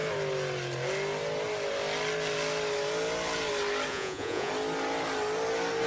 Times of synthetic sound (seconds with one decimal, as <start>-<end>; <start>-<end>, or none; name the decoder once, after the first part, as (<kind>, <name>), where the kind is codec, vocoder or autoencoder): 3.9-4.5 (vocoder, Vocos)